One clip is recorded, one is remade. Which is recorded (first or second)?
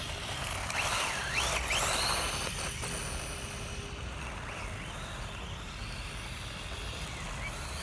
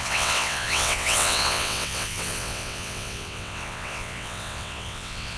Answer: first